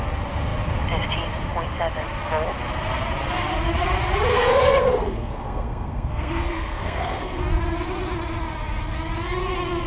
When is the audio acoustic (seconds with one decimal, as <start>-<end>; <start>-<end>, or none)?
0.0-4.3; 7.4-9.9